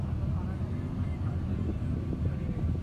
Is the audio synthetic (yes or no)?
no